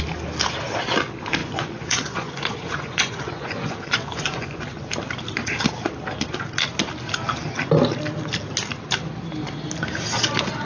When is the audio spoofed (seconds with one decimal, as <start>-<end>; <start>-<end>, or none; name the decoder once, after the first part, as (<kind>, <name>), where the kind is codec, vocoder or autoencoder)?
1.4-4.6 (vocoder, Vocos)